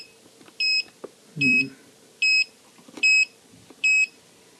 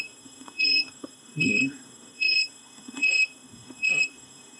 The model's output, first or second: second